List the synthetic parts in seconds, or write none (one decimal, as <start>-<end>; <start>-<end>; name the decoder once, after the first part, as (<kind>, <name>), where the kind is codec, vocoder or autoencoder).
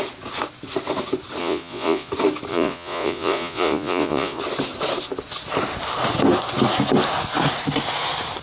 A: 1.4-2.1 (vocoder, Vocos); 2.5-4.4